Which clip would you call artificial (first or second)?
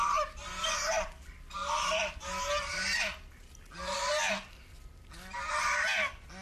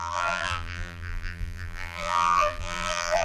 second